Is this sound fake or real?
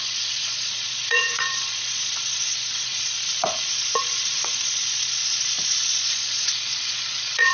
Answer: fake